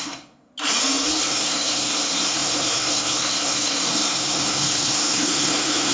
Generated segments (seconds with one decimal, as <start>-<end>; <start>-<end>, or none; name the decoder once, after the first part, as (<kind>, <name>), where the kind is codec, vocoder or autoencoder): 0.0-0.5 (codec, SNAC); 1.2-5.9